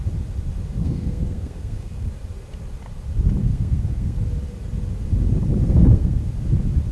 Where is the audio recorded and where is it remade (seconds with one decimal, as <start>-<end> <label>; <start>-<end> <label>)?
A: 0.0-0.8 recorded; 0.8-2.1 remade; 2.1-3.4 recorded; 3.4-4.2 remade; 4.2-5.6 recorded; 5.6-6.2 remade; 6.2-6.9 recorded